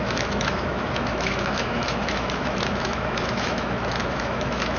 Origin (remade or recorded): remade